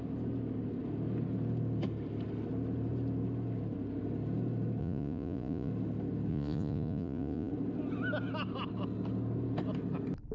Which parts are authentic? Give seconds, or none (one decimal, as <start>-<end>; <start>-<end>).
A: 0.0-4.8; 5.7-6.3; 7.5-10.3